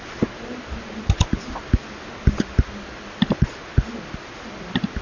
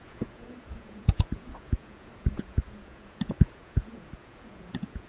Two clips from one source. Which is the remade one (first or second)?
second